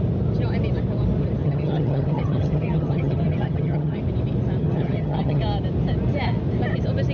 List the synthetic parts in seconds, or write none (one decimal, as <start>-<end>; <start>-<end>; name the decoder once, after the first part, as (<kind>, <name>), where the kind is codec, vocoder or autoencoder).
1.4-4.0 (vocoder, HiFi-GAN); 4.6-5.4